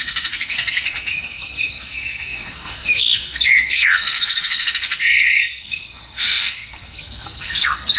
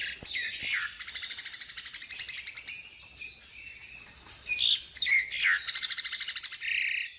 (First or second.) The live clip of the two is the second